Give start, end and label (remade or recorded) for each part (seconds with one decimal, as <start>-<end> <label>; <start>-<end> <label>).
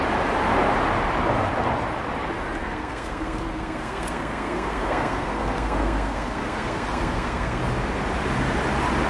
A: 0.0-2.6 recorded; 2.6-7.6 remade; 7.6-9.1 recorded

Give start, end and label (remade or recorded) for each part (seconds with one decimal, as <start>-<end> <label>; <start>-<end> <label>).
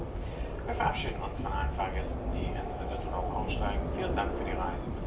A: 0.0-0.9 recorded; 0.9-1.8 remade; 1.8-2.3 recorded; 2.3-3.5 remade; 3.5-5.1 recorded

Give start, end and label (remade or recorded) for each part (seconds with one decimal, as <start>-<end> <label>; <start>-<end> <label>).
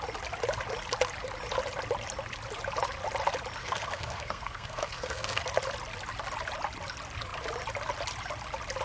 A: 0.0-3.6 recorded; 3.6-5.4 remade; 5.4-8.8 recorded